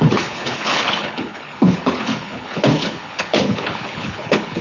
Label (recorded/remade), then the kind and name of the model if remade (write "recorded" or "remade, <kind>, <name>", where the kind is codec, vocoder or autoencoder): remade, codec, HILCodec